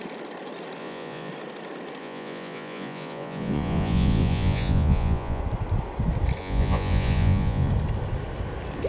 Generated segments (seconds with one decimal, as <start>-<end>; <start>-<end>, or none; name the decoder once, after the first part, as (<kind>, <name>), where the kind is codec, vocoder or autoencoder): 0.8-1.3 (vocoder, Vocos); 2.0-5.4; 6.4-7.7